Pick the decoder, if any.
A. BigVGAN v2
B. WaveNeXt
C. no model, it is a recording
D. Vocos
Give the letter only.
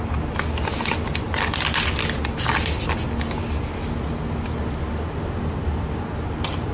C